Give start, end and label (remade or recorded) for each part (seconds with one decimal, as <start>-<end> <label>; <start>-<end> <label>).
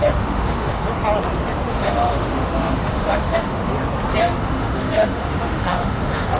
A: 0.0-0.8 remade; 0.8-1.7 recorded; 1.7-3.6 remade; 3.6-4.2 recorded; 4.2-6.4 remade